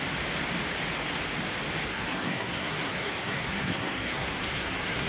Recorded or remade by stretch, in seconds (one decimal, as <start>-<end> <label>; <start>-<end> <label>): 0.0-1.9 recorded; 1.9-5.1 remade